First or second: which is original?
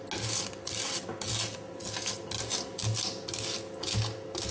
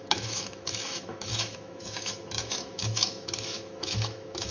first